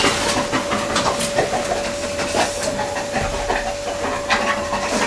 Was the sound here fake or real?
real